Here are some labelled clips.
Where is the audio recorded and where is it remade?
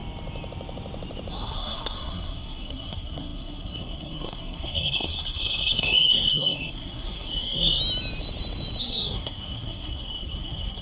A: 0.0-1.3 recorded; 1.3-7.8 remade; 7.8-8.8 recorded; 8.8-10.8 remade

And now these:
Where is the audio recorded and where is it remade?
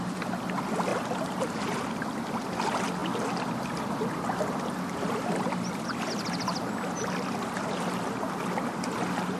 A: 0.0-9.4 recorded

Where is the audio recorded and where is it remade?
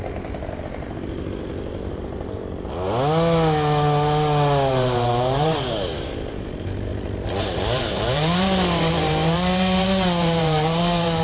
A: 0.0-2.4 remade; 2.4-4.7 recorded; 4.7-6.9 remade; 6.9-7.4 recorded; 7.4-11.2 remade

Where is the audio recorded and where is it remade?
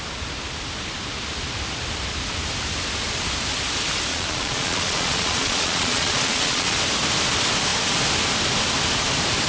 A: 0.0-4.1 recorded; 4.1-6.8 remade; 6.8-9.5 recorded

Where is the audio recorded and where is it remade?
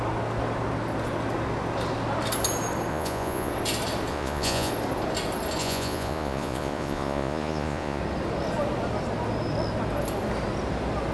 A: 0.0-2.9 recorded; 2.9-3.5 remade; 3.5-4.1 recorded; 4.1-4.7 remade; 4.7-5.6 recorded; 5.6-8.0 remade; 8.0-11.1 recorded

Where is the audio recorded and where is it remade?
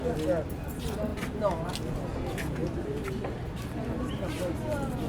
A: 0.0-5.1 recorded